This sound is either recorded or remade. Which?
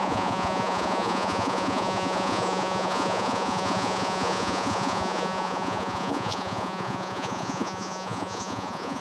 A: remade